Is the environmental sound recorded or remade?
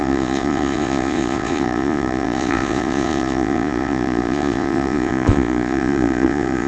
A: remade